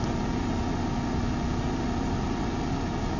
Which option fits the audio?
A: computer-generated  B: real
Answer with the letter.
B